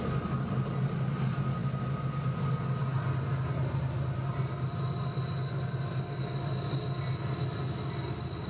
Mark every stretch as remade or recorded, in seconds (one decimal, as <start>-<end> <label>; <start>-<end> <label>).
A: 0.0-8.5 recorded